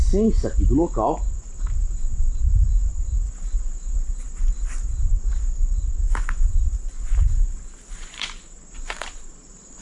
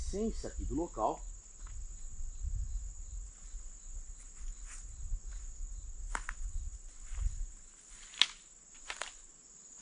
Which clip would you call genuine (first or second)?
second